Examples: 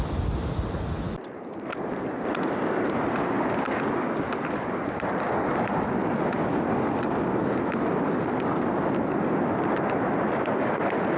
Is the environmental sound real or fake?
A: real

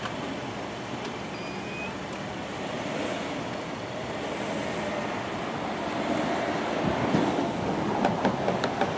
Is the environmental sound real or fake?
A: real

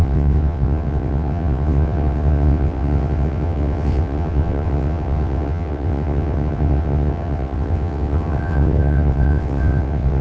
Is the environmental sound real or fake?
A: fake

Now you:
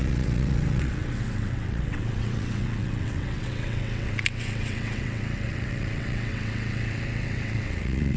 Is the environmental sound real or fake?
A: fake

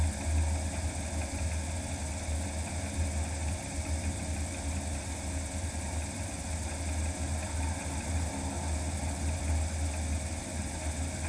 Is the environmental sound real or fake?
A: real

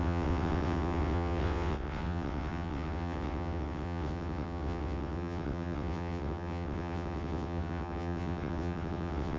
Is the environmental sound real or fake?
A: fake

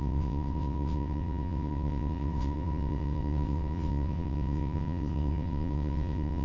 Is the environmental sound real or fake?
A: fake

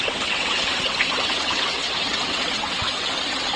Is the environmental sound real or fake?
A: fake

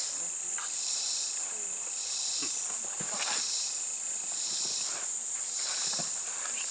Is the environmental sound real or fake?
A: real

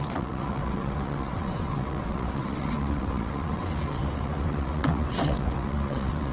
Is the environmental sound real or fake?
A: fake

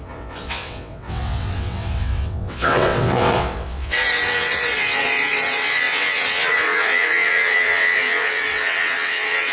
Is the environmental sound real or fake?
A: fake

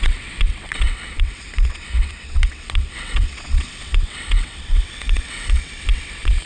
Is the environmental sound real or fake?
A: fake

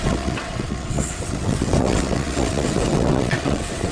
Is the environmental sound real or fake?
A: fake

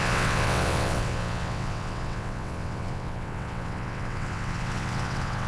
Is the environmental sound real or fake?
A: fake